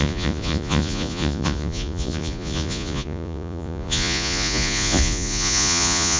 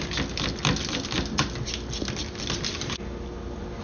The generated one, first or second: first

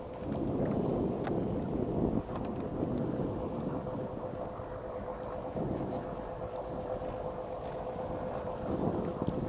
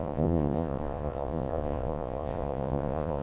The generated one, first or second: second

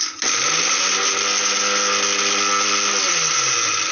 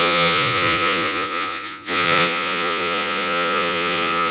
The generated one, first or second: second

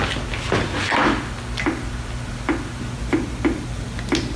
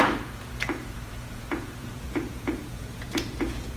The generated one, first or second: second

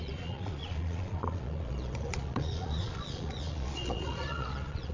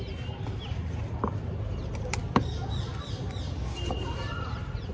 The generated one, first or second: first